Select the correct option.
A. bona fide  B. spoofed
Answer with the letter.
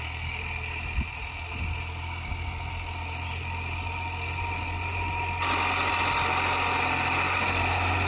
A